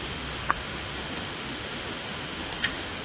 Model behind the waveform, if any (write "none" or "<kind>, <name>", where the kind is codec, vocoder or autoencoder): autoencoder, DAC-VAE